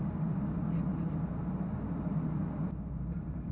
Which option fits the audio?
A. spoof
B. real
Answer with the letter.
A